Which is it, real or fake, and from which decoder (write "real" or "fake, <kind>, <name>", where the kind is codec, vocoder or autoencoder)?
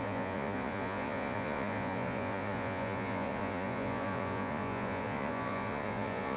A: fake, vocoder, Vocos